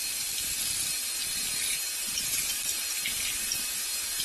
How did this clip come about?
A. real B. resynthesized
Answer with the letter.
A